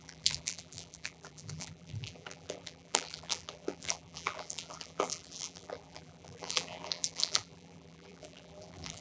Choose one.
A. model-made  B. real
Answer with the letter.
A